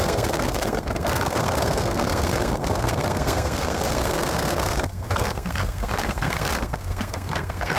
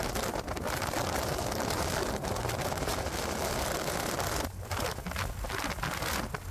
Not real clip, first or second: first